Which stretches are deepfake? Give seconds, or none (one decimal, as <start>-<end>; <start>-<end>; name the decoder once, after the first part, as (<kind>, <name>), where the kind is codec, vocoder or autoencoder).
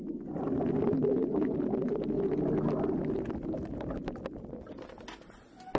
none